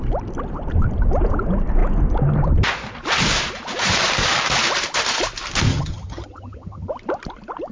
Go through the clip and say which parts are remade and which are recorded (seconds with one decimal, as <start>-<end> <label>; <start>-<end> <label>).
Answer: 0.0-5.7 recorded; 5.7-6.9 remade; 6.9-7.7 recorded